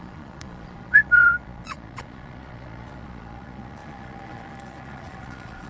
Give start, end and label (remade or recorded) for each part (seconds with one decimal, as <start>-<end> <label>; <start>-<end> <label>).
0.0-5.7 remade